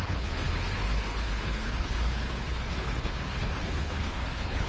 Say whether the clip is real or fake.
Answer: fake